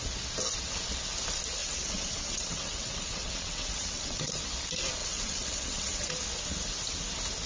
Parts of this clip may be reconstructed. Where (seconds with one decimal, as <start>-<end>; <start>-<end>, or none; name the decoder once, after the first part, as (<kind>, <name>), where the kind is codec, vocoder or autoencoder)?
1.6-4.3 (vocoder, WaveNeXt); 5.0-6.1